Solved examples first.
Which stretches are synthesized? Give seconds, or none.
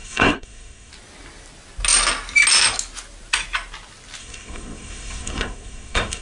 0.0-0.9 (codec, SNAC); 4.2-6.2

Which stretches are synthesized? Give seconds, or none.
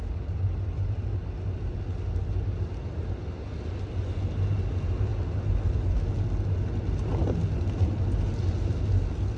none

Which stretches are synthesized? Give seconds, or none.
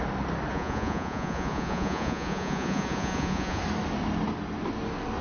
0.5-3.6 (vocoder, Vocos)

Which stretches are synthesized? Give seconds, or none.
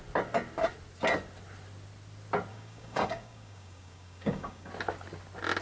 2.5-4.7 (codec, DAC)